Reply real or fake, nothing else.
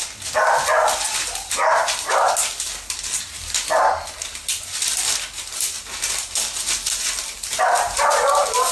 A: real